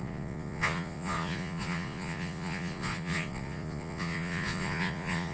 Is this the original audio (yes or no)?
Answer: no